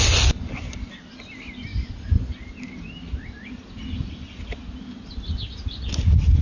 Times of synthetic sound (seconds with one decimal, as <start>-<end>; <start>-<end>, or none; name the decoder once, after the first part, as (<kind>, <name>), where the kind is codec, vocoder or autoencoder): none